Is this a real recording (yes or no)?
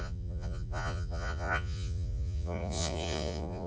no